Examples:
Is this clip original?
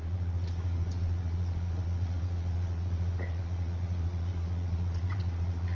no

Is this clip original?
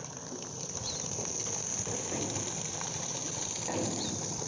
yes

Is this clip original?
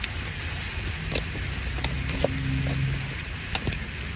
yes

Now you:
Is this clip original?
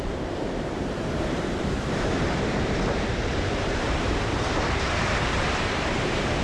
no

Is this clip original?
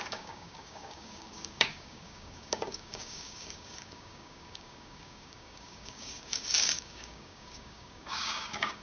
no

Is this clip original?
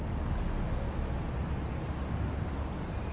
yes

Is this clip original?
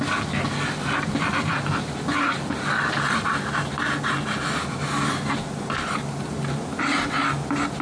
yes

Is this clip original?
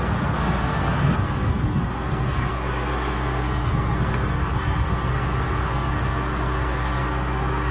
no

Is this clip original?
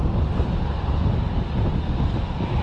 yes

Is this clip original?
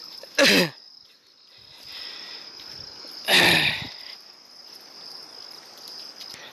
yes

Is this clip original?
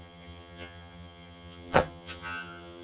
no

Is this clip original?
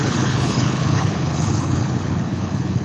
no